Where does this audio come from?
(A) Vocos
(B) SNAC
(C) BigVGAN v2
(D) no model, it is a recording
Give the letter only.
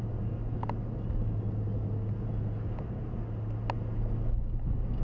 D